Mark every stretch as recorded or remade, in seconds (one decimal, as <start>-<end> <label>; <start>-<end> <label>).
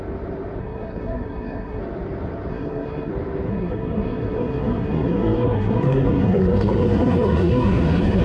0.0-0.6 recorded; 0.6-1.8 remade; 1.8-2.5 recorded; 2.5-3.1 remade; 3.1-3.5 recorded; 3.5-8.2 remade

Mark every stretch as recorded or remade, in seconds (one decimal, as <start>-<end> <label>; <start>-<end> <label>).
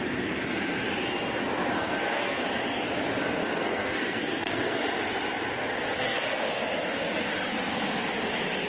0.0-1.4 recorded; 1.4-2.4 remade; 2.4-3.4 recorded; 3.4-4.8 remade; 4.8-6.0 recorded; 6.0-6.6 remade; 6.6-8.7 recorded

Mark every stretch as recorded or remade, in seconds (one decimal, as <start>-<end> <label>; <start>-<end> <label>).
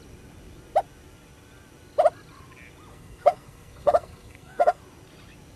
0.0-2.9 recorded; 2.9-4.8 remade; 4.8-5.6 recorded